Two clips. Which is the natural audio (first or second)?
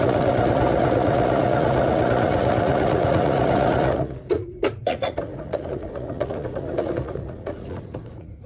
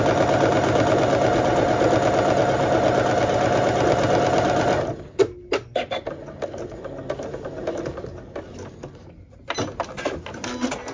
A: second